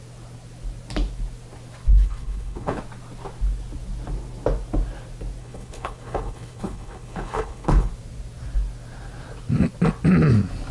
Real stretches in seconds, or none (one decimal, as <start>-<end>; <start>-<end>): 0.0-1.9; 2.8-5.4; 7.9-10.7